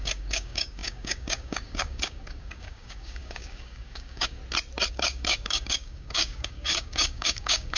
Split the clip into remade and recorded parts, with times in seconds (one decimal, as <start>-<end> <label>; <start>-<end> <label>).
0.0-4.4 remade; 4.4-4.9 recorded; 4.9-7.8 remade